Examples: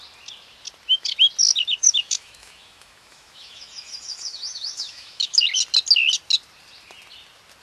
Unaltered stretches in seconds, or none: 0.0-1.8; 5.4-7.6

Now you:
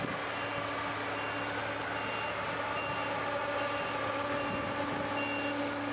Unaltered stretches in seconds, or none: 0.0-5.9

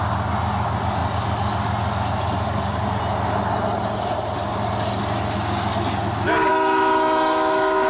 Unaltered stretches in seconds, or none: 0.0-6.5

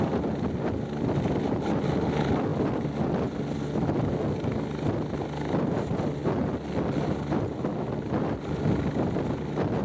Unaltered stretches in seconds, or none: 0.0-9.8

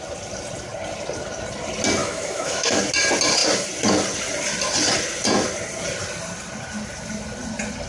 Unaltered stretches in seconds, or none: 0.0-2.0; 2.8-7.9

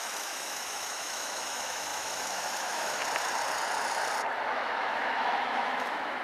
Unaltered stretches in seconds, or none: 3.0-4.5